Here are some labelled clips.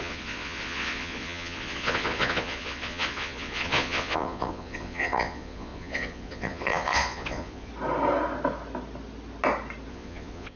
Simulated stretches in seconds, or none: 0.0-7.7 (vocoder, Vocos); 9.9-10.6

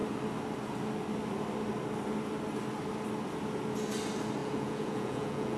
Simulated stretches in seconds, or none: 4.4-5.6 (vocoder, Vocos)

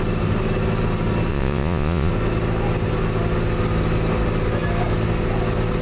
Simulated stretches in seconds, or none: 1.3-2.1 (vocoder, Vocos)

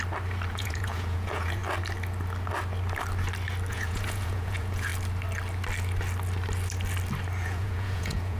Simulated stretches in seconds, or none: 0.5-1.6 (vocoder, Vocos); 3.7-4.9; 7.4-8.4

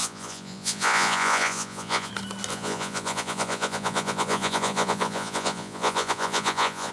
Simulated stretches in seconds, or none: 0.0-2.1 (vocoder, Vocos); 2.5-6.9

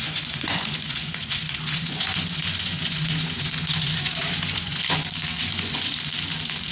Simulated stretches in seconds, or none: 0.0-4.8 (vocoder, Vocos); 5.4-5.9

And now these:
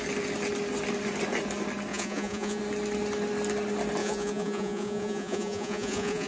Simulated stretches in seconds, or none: 1.9-2.6 (vocoder, Vocos); 4.0-6.3